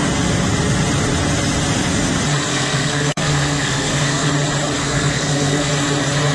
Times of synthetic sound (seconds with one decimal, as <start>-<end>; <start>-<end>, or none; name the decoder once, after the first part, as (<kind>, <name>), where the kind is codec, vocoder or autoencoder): 2.5-4.3 (codec, SNAC); 4.8-5.7